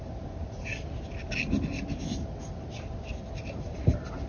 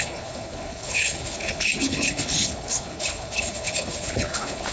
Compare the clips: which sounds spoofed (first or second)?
second